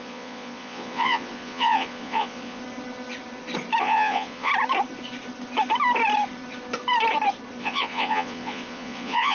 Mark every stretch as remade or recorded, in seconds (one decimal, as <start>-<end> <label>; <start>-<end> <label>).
0.0-2.6 remade; 2.6-3.8 recorded; 3.8-4.5 remade; 4.5-7.6 recorded; 7.6-9.3 remade